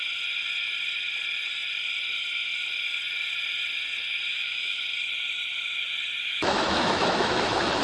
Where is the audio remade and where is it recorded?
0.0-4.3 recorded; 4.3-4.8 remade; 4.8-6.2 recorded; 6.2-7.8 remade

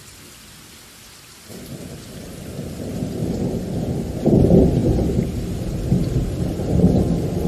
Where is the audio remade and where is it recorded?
0.0-7.5 recorded